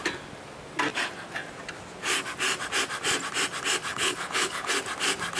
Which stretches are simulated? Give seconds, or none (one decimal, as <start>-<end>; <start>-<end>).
3.9-4.7